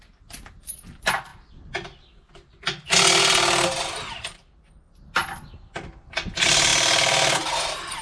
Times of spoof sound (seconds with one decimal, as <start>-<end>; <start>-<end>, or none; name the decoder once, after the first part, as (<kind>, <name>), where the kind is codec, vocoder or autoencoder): 6.7-7.5 (vocoder, BigVGAN v2)